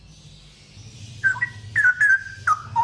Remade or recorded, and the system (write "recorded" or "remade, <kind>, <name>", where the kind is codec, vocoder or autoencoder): recorded